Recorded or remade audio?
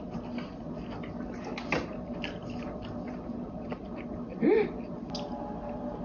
recorded